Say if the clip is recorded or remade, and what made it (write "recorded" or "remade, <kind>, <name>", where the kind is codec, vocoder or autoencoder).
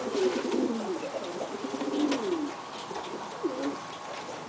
recorded